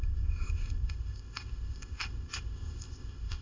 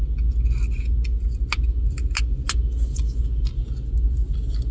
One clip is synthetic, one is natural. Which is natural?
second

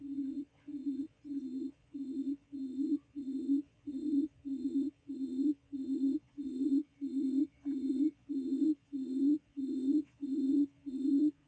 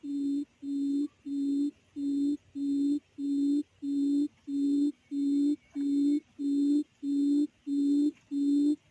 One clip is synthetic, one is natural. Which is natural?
second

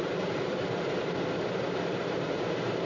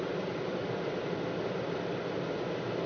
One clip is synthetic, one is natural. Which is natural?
second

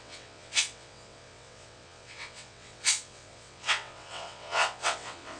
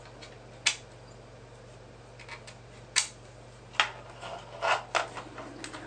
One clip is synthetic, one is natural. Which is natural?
second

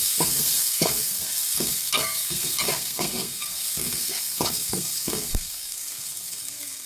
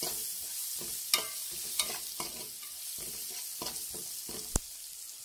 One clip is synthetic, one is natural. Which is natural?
second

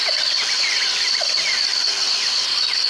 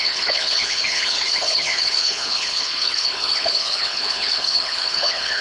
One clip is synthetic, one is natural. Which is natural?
first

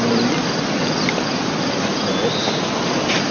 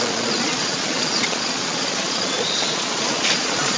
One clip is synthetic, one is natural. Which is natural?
first